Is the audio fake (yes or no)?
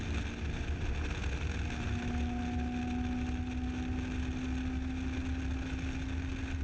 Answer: no